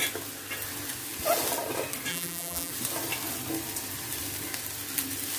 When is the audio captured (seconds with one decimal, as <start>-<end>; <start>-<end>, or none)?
0.0-2.1; 2.7-5.4